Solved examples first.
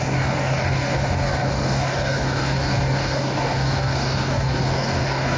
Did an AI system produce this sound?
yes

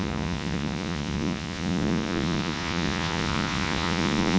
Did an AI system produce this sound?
yes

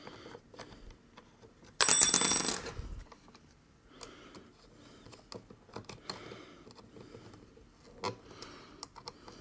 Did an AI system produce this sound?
no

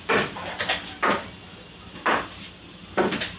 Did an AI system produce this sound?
no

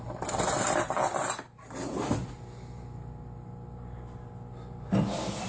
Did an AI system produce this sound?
no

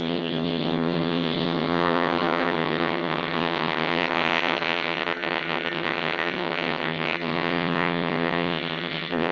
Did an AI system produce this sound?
yes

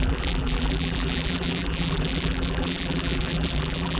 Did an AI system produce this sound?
yes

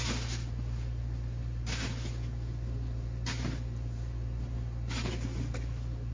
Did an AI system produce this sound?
no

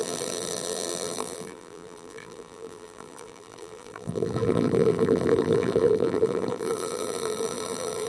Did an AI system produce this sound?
yes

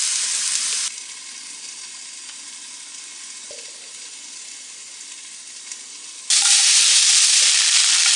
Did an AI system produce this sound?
no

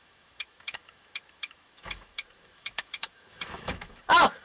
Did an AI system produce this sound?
yes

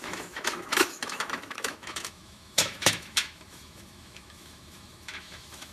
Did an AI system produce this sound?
yes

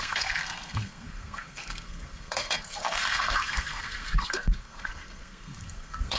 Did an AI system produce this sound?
yes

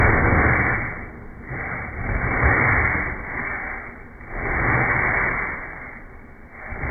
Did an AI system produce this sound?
no